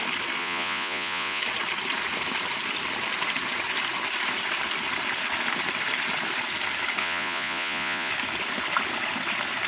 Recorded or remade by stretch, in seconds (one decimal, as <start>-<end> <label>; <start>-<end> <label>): 0.0-0.4 recorded; 0.4-1.4 remade; 1.4-7.0 recorded; 7.0-8.1 remade; 8.1-9.7 recorded